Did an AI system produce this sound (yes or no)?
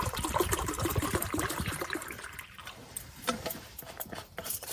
yes